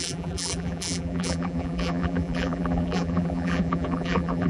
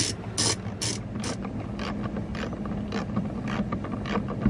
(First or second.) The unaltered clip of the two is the second